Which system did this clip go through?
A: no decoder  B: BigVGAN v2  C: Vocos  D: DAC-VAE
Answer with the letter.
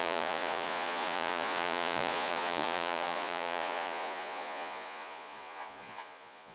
C